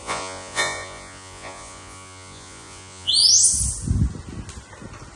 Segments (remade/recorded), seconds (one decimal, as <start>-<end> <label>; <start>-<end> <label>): 0.0-3.1 remade; 3.1-5.2 recorded